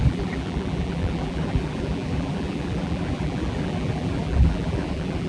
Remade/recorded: remade